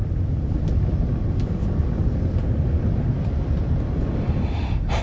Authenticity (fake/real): real